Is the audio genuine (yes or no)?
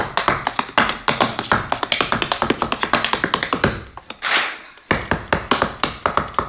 yes